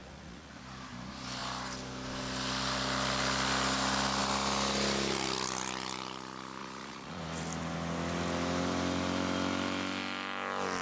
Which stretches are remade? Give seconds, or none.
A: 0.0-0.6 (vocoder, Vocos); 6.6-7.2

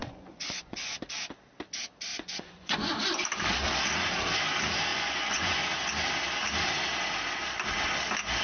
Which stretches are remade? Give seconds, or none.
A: 0.0-1.0 (vocoder, Vocos); 2.1-2.9; 4.9-5.6

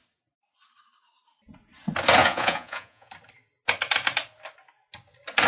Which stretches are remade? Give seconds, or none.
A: 2.2-3.1 (vocoder, Vocos)

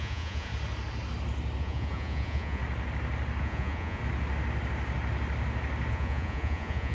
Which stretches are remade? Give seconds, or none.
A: 0.0-0.5 (vocoder, Vocos); 1.6-2.6; 3.4-4.0; 5.9-6.9

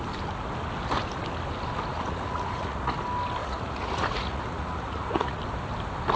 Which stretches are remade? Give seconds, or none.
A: 1.9-3.0 (vocoder, Vocos); 3.4-5.4

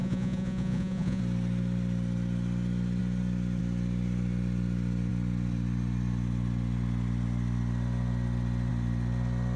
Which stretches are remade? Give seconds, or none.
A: 0.0-1.2 (vocoder, Vocos)